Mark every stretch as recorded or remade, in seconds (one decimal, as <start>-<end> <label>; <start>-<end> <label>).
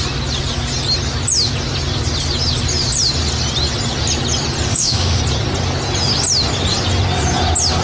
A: 0.0-4.7 recorded; 4.7-5.2 remade; 5.2-7.8 recorded